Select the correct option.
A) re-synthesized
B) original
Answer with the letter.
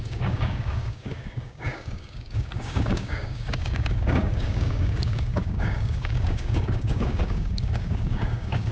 A